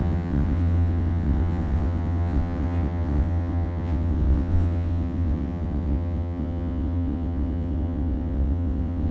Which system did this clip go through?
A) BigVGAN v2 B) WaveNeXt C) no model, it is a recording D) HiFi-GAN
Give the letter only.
B